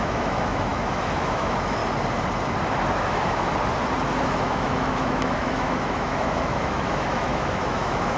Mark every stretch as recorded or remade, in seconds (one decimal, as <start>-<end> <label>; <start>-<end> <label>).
0.0-1.8 remade; 1.8-2.9 recorded; 2.9-3.5 remade; 3.5-4.2 recorded; 4.2-8.2 remade